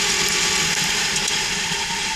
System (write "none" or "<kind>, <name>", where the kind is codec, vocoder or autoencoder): none